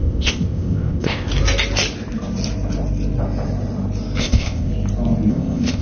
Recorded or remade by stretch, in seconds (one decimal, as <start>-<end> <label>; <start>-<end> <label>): 0.0-1.3 remade; 1.3-4.2 recorded; 4.2-4.7 remade; 4.7-5.3 recorded; 5.3-5.8 remade